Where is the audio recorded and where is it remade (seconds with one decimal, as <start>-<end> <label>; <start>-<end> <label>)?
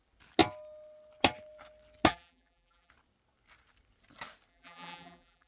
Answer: 0.0-2.1 recorded; 2.1-2.9 remade; 2.9-4.5 recorded; 4.5-5.5 remade